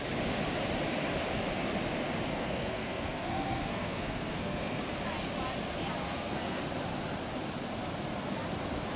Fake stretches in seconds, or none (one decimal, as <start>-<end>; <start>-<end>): 2.3-4.8; 6.0-6.6